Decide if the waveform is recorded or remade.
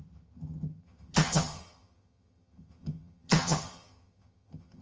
remade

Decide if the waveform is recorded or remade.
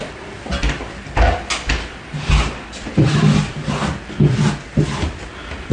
recorded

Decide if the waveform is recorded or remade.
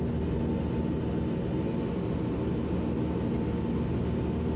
recorded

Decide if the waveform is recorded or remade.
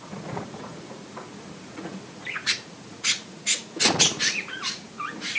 remade